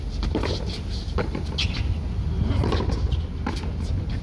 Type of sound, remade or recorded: recorded